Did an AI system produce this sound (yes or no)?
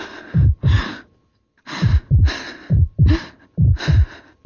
no